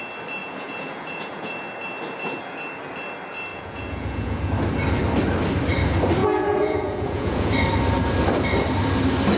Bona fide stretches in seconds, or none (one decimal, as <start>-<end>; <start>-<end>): 0.0-0.4; 1.5-3.5; 4.5-6.2; 7.5-9.4